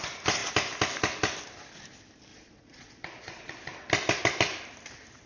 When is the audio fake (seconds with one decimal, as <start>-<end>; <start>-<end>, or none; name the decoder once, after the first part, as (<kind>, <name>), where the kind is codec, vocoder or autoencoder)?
2.3-3.5 (vocoder, Vocos)